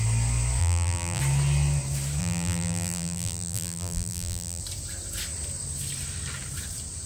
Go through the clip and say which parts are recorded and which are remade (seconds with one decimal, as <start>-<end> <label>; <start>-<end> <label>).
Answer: 0.0-0.6 recorded; 0.6-1.2 remade; 1.2-2.2 recorded; 2.2-4.6 remade; 4.6-7.1 recorded